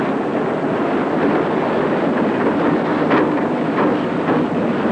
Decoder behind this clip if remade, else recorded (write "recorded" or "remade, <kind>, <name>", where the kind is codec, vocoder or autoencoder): recorded